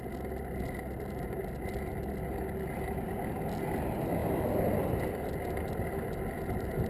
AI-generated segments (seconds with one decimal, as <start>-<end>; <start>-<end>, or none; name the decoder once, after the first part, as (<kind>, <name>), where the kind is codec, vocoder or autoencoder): none